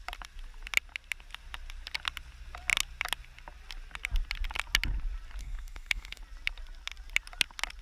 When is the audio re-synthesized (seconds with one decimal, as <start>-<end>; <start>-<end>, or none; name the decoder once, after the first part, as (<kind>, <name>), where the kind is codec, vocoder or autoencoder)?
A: 5.4-6.2 (codec, SNAC)